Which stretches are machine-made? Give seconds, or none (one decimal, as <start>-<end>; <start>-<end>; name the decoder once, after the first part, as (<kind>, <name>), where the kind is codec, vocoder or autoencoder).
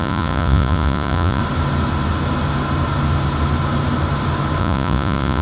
0.0-1.4 (vocoder, Vocos); 4.6-5.4